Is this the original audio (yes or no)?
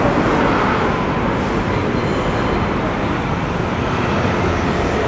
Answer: yes